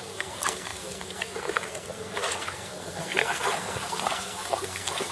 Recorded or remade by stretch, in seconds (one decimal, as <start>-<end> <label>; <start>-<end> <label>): 0.0-5.1 remade